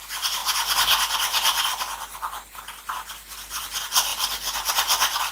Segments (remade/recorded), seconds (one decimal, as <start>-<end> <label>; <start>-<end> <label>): 0.0-0.4 remade; 0.4-3.6 recorded; 3.6-5.3 remade